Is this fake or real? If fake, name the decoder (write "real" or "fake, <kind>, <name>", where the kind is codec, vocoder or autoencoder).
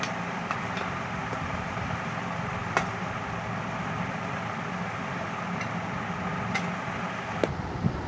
real